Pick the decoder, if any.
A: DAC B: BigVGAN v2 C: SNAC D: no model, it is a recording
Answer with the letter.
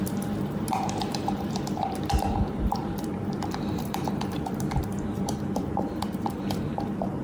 B